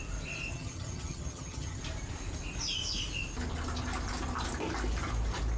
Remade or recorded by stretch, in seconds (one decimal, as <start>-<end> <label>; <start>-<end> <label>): 0.0-0.5 recorded; 0.5-1.8 remade; 1.8-5.6 recorded